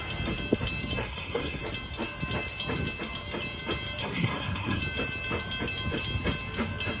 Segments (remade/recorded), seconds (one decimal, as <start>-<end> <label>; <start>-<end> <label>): 0.0-1.0 recorded; 1.0-1.6 remade; 1.6-4.0 recorded; 4.0-4.8 remade; 4.8-7.0 recorded